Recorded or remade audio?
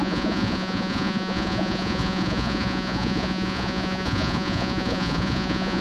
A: remade